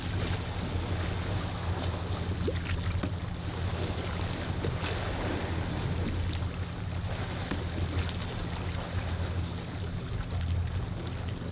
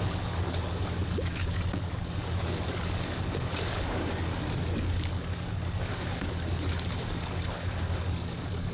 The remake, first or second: second